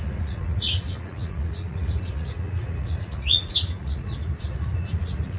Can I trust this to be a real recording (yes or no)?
no